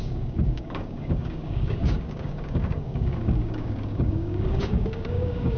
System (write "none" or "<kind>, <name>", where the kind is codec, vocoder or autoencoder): codec, DAC